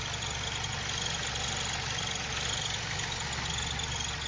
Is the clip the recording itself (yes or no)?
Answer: yes